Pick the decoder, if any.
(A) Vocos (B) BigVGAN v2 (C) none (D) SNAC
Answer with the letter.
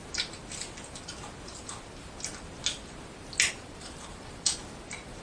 C